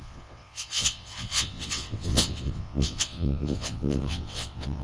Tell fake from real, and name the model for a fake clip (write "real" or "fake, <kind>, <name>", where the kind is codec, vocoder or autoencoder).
fake, vocoder, WaveNeXt